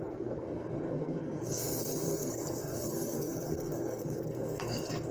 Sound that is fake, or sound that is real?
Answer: fake